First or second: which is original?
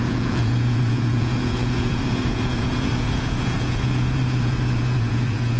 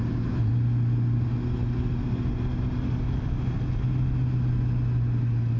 second